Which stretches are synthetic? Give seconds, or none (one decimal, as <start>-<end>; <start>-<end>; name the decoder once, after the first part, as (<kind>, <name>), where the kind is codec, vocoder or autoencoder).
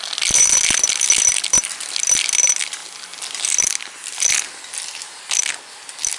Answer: none